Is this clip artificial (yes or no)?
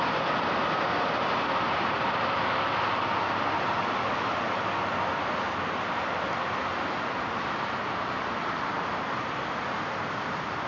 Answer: no